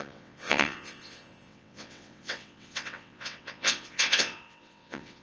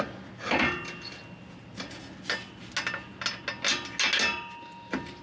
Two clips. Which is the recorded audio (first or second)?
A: second